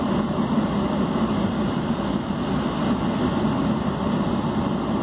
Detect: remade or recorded recorded